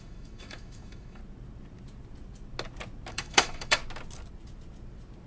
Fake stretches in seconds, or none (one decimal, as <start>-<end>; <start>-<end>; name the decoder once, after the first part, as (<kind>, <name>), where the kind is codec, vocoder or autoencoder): 0.0-1.2 (autoencoder, DAC-VAE); 3.1-3.8